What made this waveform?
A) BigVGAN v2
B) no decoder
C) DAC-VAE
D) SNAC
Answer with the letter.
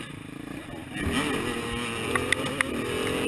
B